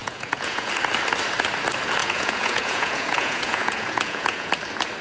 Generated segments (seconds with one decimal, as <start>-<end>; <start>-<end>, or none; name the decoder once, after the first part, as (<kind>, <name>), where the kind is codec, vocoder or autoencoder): 0.0-0.7 (vocoder, Vocos); 2.0-4.5